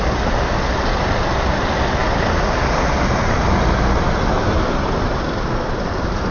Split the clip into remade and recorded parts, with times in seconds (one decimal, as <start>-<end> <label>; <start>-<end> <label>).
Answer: 0.0-6.3 recorded